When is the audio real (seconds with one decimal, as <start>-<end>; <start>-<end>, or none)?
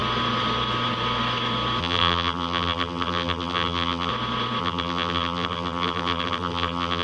0.0-1.8; 4.1-4.6